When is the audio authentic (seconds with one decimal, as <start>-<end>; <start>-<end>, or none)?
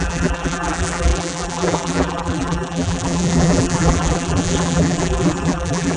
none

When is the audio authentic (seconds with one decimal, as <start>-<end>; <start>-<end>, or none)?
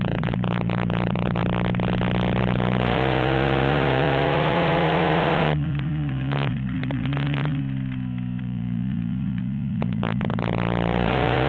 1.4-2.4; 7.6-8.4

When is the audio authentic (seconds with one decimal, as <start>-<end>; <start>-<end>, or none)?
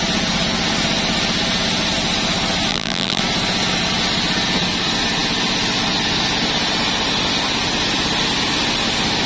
0.0-2.7; 3.2-9.3